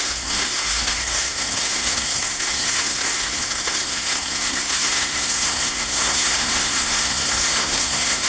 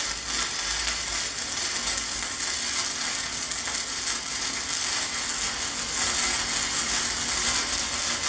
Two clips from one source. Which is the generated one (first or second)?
first